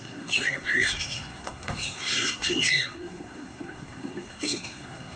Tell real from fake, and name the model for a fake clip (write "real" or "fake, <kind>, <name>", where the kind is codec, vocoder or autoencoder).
fake, codec, SNAC